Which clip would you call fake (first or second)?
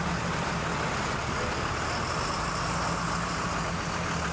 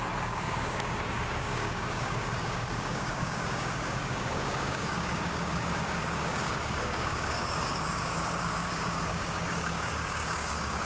second